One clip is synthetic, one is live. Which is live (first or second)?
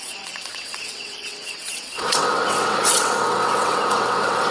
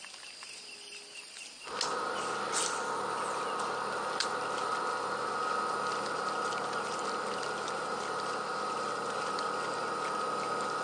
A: second